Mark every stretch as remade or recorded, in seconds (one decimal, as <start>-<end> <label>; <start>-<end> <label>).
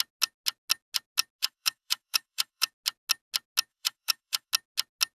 0.0-1.4 recorded; 1.4-2.7 remade; 2.7-3.7 recorded; 3.7-4.5 remade; 4.5-5.2 recorded